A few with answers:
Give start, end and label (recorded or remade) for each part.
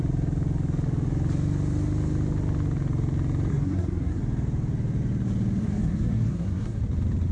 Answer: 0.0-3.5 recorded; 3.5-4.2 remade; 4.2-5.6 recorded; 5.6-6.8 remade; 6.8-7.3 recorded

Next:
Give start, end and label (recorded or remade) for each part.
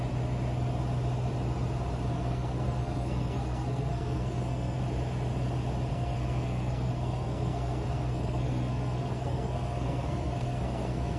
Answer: 0.0-2.1 recorded; 2.1-4.8 remade; 4.8-5.9 recorded; 5.9-11.2 remade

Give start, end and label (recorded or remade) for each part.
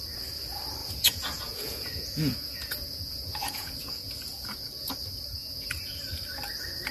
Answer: 0.0-0.8 recorded; 0.8-4.9 remade; 4.9-5.4 recorded; 5.4-6.0 remade; 6.0-6.9 recorded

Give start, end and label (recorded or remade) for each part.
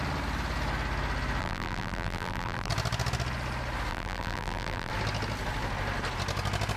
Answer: 0.0-1.4 recorded; 1.4-2.7 remade; 2.7-3.9 recorded; 3.9-4.9 remade; 4.9-6.8 recorded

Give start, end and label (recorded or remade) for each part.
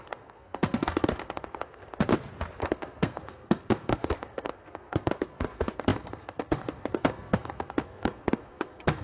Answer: 0.0-1.8 remade; 1.8-2.6 recorded; 2.6-9.0 remade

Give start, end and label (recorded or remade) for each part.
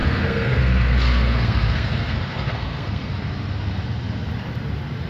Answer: 0.0-3.1 remade; 3.1-5.1 recorded